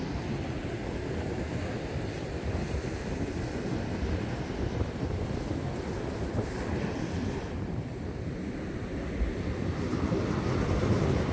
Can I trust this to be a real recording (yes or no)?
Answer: yes